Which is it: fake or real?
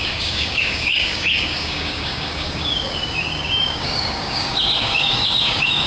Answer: fake